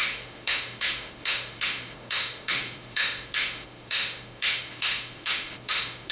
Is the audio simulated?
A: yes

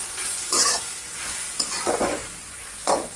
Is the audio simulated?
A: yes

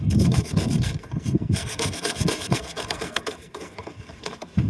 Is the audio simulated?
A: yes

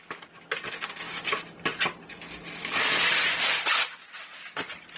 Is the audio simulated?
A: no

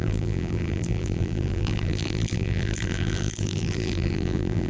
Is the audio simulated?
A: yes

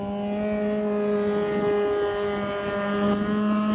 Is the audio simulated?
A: no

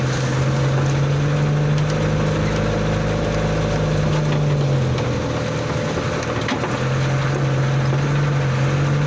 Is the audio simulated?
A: no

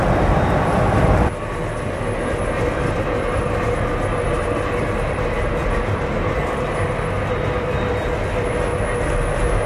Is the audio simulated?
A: no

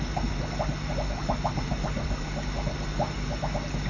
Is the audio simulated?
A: no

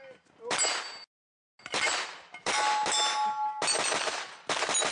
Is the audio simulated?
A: no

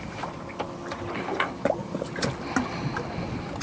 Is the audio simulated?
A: no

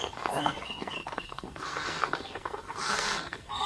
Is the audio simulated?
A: yes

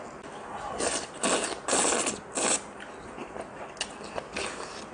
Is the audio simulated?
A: no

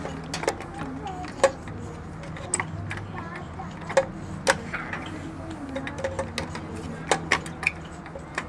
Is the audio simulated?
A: no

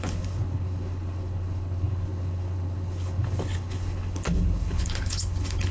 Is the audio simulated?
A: yes